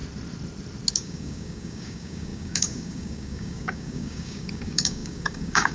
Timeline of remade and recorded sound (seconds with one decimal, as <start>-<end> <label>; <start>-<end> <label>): 0.0-0.9 recorded; 0.9-5.7 remade